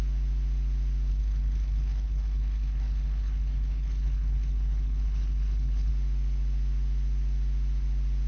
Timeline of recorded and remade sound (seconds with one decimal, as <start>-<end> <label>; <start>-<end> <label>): 0.0-1.1 recorded; 1.1-5.9 remade; 5.9-8.3 recorded